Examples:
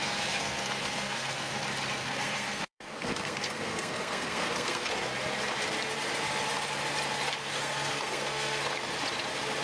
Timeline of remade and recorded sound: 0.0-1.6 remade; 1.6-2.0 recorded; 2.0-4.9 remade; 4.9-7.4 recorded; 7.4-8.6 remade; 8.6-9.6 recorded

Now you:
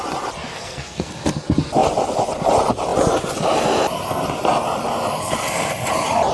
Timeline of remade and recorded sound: 0.0-0.5 recorded; 0.5-1.1 remade; 1.1-6.3 recorded

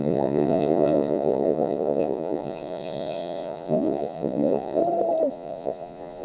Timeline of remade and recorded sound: 0.0-4.8 remade; 4.8-5.3 recorded; 5.3-6.2 remade

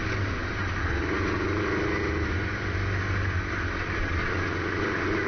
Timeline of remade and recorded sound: 0.0-5.3 recorded

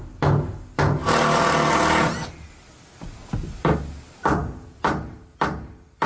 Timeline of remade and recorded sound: 0.0-6.1 recorded